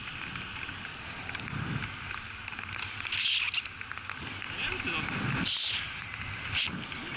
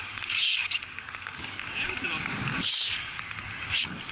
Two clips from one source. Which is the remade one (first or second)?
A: second